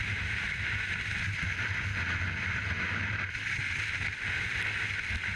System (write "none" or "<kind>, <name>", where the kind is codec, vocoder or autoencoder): none